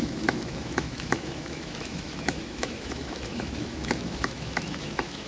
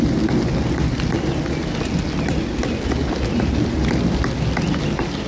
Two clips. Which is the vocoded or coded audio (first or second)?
first